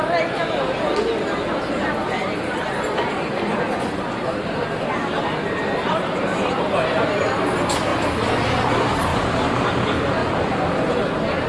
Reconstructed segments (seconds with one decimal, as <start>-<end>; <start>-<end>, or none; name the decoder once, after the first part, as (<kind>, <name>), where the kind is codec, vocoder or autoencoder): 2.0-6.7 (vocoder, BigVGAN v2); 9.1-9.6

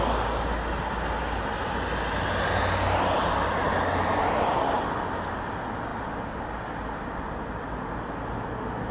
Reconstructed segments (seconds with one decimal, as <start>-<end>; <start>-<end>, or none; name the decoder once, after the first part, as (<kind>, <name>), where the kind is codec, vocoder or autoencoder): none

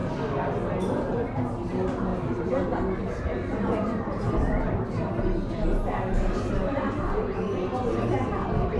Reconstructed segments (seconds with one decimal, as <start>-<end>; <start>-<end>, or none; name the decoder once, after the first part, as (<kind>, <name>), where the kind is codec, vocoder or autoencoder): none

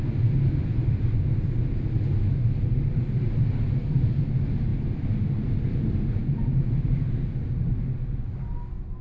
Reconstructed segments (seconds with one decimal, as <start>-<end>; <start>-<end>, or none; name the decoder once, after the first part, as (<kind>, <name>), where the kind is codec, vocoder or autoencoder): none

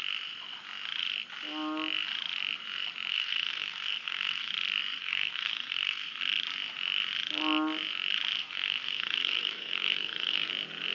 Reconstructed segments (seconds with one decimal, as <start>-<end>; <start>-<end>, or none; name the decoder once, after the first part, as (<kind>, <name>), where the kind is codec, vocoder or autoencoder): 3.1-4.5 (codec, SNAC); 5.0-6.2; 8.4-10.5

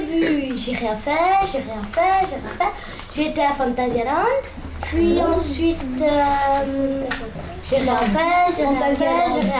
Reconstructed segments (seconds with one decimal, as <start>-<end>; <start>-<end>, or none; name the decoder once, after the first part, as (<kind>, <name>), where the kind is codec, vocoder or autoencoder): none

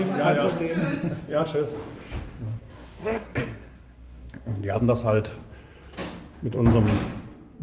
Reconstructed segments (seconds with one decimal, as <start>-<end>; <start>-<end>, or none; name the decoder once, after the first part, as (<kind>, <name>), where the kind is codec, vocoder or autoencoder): 2.6-4.8 (codec, SNAC)